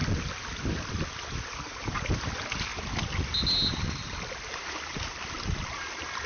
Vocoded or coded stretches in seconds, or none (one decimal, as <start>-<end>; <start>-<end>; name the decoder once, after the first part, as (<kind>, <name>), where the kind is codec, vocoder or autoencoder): none